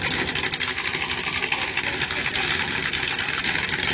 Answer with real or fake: real